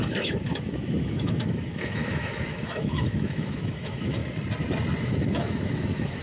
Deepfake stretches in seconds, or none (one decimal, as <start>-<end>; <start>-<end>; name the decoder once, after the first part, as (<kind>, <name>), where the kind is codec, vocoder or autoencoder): 0.0-4.2 (autoencoder, DAC-VAE); 5.0-6.2